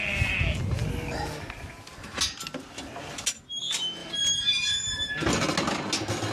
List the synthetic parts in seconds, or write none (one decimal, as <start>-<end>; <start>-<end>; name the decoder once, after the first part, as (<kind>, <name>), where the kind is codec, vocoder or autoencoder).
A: 4.0-5.1 (vocoder, BigVGAN v2)